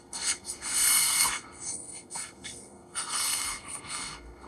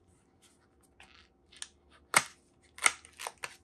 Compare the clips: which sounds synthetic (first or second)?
first